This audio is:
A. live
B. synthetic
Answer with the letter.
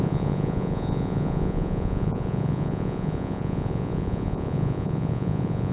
B